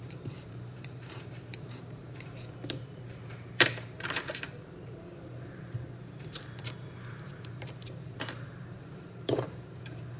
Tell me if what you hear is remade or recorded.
remade